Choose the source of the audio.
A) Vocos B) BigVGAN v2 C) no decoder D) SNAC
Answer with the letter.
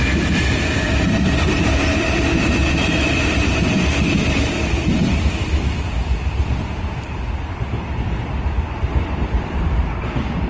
B